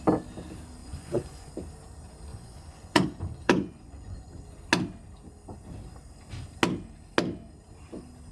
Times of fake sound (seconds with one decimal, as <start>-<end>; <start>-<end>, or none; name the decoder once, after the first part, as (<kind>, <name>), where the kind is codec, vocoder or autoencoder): 0.8-1.5 (vocoder, Vocos); 2.3-4.3